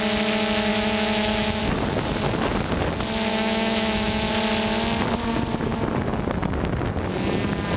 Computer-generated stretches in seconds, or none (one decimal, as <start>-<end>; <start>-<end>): 0.7-1.6; 3.3-4.3